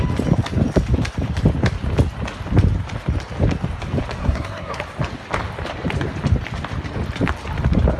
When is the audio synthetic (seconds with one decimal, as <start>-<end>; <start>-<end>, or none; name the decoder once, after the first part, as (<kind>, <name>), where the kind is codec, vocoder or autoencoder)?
4.2-4.8 (codec, SNAC)

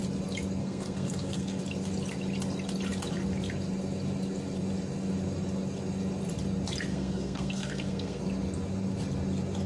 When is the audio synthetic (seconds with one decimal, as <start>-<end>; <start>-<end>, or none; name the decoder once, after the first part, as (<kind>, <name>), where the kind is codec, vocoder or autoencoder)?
0.6-1.6 (codec, SNAC); 6.9-8.2

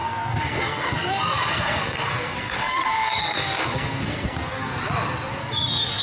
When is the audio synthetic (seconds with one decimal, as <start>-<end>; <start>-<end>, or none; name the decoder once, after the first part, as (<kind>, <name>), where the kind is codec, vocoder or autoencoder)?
0.0-4.7 (codec, SNAC); 5.3-6.0

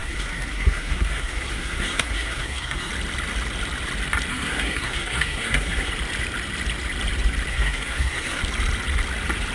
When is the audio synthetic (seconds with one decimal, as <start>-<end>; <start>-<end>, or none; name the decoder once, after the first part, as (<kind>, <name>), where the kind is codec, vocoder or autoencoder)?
0.0-2.9 (codec, SNAC); 4.3-5.9; 7.5-8.4

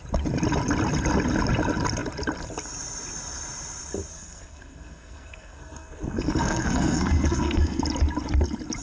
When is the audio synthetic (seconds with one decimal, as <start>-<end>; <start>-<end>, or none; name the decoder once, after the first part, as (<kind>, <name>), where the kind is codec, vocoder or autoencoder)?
4.1-7.8 (codec, SNAC)

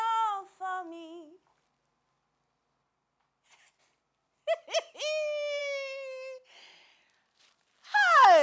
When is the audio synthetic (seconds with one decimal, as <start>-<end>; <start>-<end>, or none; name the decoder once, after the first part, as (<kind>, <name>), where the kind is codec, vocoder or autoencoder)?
none

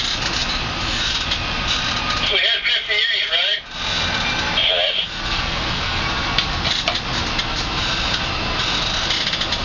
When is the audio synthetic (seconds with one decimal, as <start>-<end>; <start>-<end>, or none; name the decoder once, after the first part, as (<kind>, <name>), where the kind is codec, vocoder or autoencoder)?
5.3-6.0 (codec, SNAC)

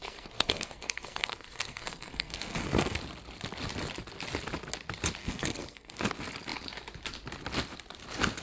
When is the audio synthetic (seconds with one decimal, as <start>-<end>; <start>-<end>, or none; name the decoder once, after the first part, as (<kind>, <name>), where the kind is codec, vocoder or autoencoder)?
0.0-3.0 (codec, SNAC); 5.2-6.0